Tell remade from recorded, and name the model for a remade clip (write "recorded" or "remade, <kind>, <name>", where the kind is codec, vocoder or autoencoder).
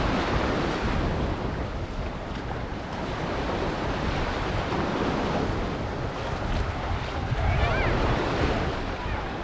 recorded